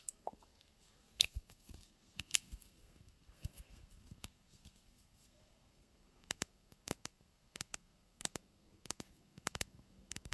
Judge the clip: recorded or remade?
remade